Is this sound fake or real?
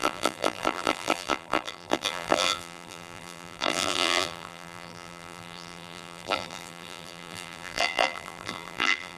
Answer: fake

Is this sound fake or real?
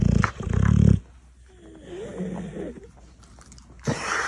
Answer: real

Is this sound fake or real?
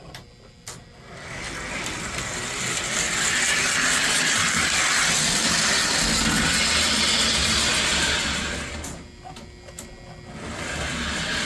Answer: real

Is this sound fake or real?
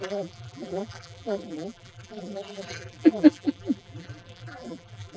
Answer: fake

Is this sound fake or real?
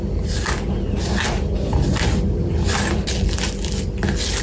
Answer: real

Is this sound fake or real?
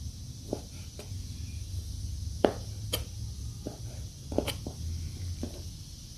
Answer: real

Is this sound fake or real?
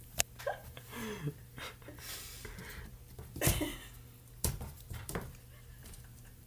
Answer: fake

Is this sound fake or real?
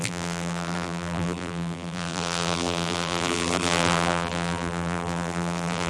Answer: fake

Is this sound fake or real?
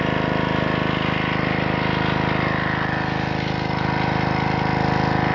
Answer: real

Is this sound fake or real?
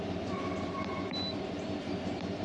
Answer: fake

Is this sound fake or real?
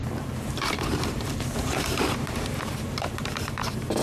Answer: fake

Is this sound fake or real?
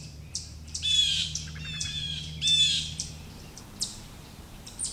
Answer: fake